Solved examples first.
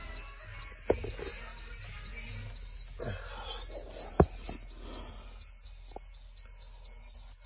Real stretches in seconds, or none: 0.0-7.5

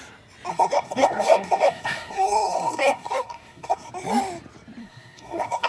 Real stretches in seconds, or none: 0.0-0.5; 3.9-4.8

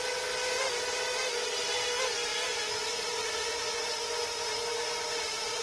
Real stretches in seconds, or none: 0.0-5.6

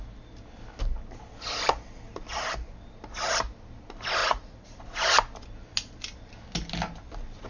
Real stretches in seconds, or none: 0.0-4.2; 4.8-7.5